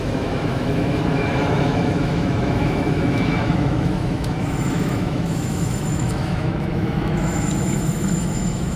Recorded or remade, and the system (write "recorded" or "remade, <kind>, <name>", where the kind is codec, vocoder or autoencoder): remade, autoencoder, DAC-VAE